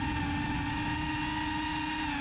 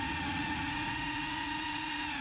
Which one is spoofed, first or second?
second